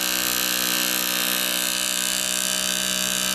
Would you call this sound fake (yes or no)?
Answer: no